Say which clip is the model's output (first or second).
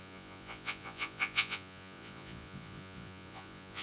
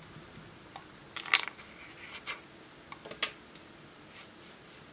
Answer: first